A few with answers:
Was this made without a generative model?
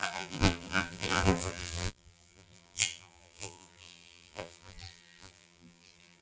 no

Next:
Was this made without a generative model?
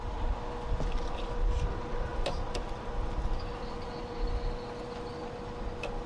yes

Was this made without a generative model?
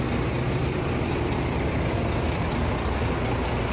no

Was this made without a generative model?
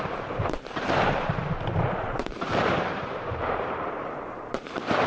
no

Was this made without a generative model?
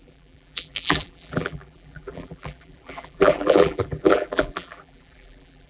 no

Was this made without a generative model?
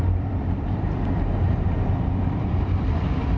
no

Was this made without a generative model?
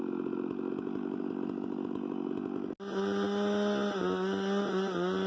yes